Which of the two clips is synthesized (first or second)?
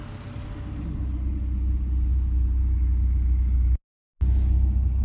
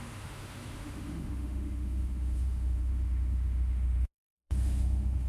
second